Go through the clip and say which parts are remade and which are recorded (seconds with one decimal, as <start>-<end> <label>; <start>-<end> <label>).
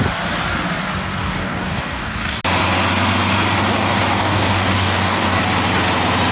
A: 0.0-1.2 recorded; 1.2-2.4 remade; 2.4-4.2 recorded; 4.2-5.4 remade; 5.4-6.3 recorded